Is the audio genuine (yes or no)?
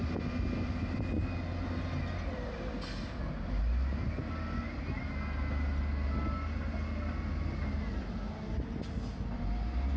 yes